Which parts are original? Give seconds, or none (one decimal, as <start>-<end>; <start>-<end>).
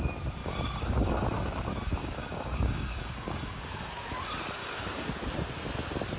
0.0-0.4; 1.1-2.0; 3.9-4.6; 5.1-6.2